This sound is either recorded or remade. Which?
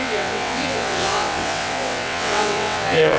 remade